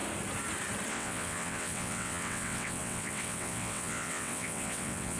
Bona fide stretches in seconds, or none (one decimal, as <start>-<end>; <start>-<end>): 0.0-0.9